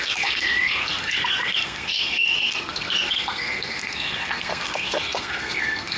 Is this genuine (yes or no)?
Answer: no